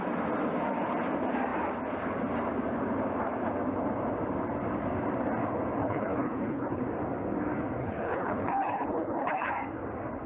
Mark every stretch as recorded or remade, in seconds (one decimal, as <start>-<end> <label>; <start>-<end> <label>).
0.0-5.8 recorded; 5.8-6.8 remade; 6.8-7.8 recorded; 7.8-9.5 remade; 9.5-10.3 recorded